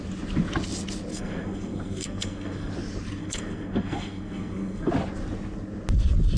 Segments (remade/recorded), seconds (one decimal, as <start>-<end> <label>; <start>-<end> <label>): 0.0-1.1 recorded; 1.1-2.7 remade; 2.7-3.2 recorded; 3.2-4.9 remade; 4.9-6.4 recorded